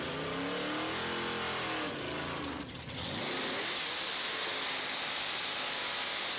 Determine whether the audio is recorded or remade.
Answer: recorded